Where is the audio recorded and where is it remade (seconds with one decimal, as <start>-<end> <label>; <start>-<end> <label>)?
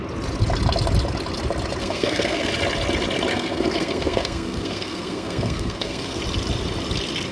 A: 0.0-1.8 recorded; 1.8-2.5 remade; 2.5-3.3 recorded; 3.3-6.2 remade; 6.2-7.3 recorded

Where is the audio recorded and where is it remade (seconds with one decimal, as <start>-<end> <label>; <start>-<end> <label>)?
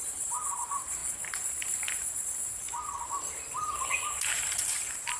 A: 0.0-1.0 remade; 1.0-4.1 recorded; 4.1-5.2 remade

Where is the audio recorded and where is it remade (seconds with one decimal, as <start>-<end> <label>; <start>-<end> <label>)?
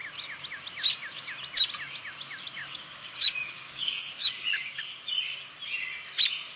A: 0.0-2.6 recorded; 2.6-4.8 remade; 4.8-6.6 recorded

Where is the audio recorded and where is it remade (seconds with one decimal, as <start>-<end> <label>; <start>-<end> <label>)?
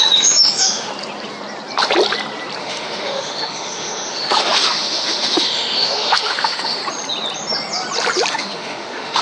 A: 0.0-0.9 remade; 0.9-2.6 recorded; 2.6-6.8 remade; 6.8-8.3 recorded; 8.3-9.2 remade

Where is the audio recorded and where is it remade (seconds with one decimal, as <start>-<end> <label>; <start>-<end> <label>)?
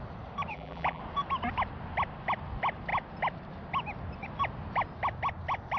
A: 0.0-0.5 recorded; 0.5-1.0 remade; 1.0-5.8 recorded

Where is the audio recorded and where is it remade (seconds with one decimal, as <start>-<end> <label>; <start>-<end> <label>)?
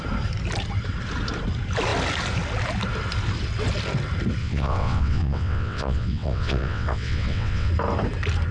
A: 0.0-4.4 recorded; 4.4-7.7 remade; 7.7-8.5 recorded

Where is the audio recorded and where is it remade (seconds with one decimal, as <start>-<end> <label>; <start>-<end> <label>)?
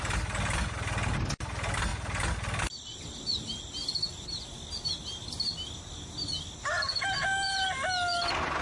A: 0.0-8.6 recorded